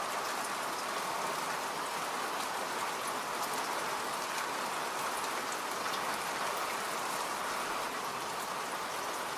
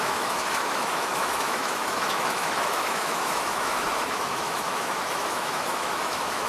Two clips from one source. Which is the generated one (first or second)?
second